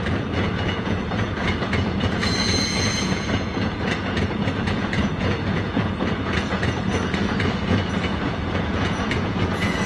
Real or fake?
fake